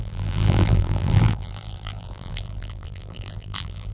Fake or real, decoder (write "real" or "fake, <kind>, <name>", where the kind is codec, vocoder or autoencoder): fake, vocoder, BigVGAN v2